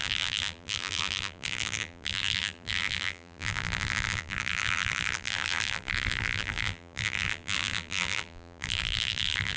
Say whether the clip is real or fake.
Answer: fake